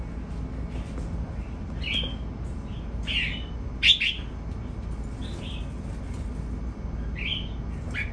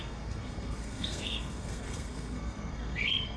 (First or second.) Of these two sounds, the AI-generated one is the second